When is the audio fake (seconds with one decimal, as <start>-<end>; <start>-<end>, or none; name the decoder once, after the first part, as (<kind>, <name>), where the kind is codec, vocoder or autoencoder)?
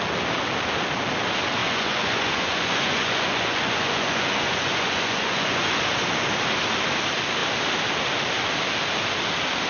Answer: 1.6-5.8 (vocoder, Vocos)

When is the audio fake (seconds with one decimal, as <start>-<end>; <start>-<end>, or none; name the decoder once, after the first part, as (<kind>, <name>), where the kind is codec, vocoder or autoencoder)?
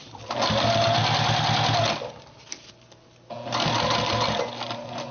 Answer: none